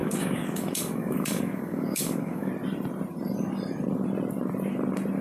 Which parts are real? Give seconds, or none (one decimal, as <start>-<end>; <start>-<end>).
2.5-5.2